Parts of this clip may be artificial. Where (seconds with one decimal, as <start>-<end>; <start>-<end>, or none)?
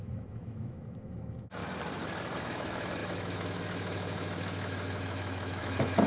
0.0-1.6; 2.4-6.1